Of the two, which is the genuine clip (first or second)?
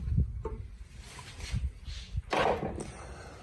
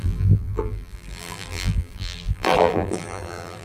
first